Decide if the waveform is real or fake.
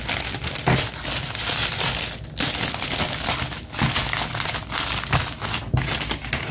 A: real